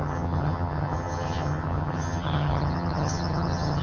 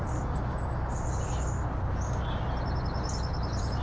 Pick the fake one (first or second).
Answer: first